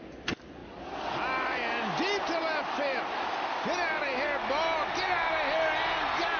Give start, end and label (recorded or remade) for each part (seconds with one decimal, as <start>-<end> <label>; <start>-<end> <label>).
0.0-6.4 recorded